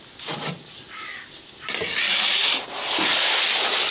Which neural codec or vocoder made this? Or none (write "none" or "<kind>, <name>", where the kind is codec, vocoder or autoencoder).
vocoder, BigVGAN v2